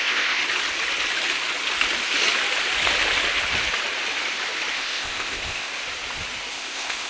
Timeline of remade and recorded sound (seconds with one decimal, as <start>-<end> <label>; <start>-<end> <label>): 0.0-0.4 remade; 0.4-4.7 recorded; 4.7-5.7 remade; 5.7-6.5 recorded; 6.5-7.1 remade